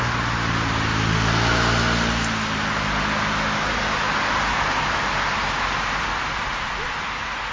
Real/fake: real